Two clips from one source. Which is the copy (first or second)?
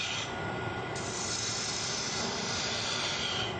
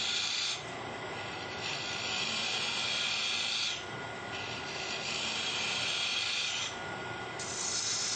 first